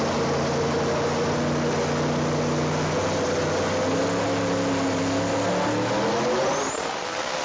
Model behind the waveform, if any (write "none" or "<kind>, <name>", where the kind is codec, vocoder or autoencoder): none